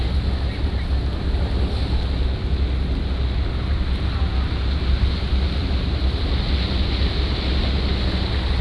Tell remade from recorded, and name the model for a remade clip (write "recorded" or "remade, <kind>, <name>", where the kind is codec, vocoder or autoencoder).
recorded